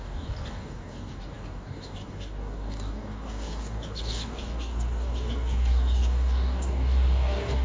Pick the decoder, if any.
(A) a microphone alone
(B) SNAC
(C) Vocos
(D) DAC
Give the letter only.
D